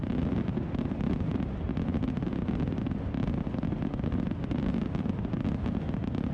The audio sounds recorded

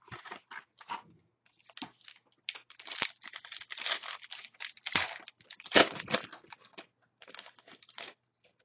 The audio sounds recorded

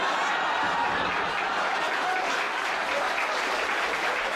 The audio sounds remade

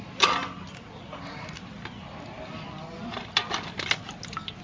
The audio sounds recorded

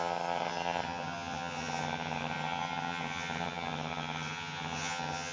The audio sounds remade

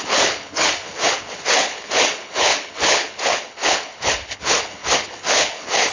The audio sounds remade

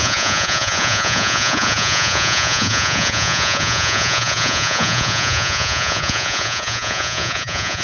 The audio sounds remade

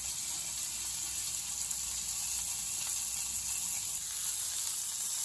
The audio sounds recorded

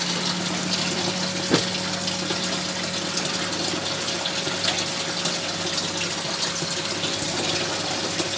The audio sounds recorded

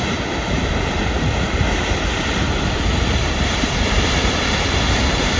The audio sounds remade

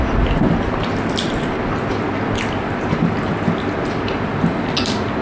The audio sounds recorded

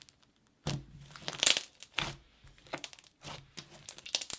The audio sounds recorded